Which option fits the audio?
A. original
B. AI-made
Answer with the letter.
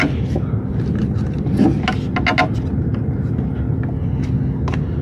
A